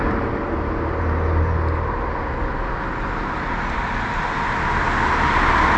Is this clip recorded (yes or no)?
yes